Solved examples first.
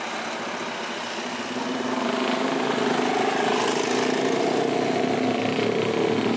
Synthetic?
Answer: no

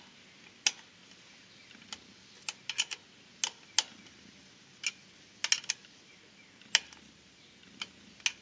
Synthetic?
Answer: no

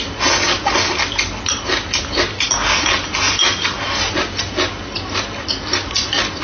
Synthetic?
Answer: no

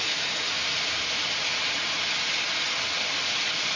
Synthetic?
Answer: no